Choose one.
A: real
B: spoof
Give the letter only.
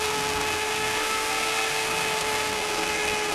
B